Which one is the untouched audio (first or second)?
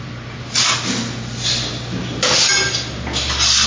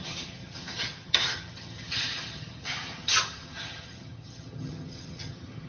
first